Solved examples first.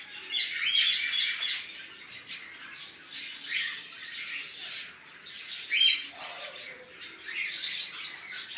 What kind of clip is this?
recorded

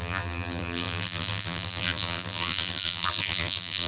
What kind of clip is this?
remade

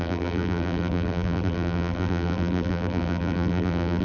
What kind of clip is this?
remade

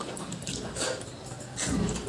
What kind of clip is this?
recorded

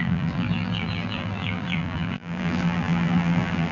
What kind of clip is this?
remade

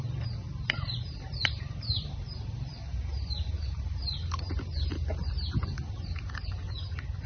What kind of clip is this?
remade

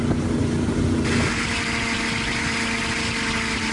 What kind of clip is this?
recorded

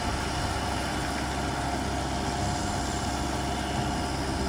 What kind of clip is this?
recorded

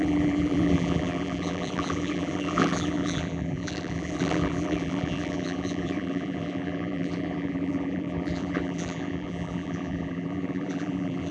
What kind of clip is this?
remade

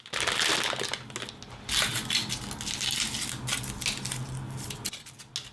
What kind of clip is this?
recorded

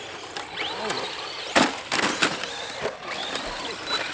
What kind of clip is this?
remade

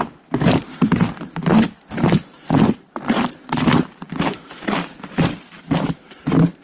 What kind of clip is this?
remade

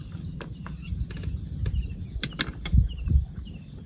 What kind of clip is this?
recorded